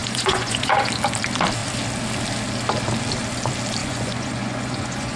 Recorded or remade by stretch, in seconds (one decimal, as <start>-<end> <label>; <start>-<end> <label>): 0.0-0.9 remade; 0.9-3.8 recorded; 3.8-5.2 remade